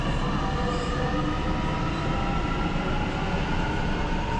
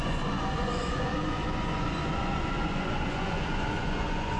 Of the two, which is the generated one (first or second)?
second